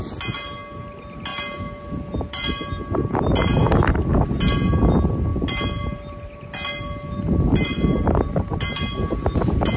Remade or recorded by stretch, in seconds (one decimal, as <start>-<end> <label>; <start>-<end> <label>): 0.0-9.8 recorded